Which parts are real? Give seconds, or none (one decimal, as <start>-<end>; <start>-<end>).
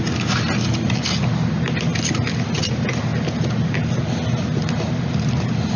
0.0-5.8